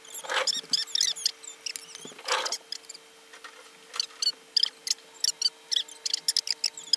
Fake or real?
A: real